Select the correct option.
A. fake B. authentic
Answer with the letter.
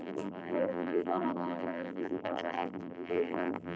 A